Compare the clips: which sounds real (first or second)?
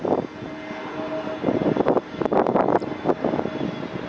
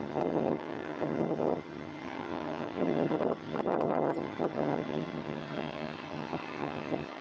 first